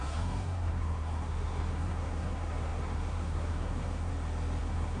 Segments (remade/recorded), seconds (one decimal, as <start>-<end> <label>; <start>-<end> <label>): 0.0-4.1 remade; 4.1-4.6 recorded; 4.6-5.0 remade